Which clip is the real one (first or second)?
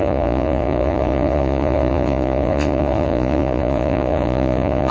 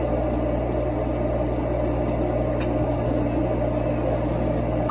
second